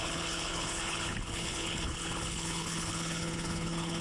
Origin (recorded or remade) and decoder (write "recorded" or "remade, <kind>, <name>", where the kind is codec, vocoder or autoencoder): remade, codec, HILCodec